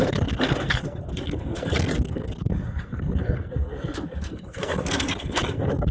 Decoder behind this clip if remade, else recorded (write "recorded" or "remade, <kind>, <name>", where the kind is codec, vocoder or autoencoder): remade, codec, SNAC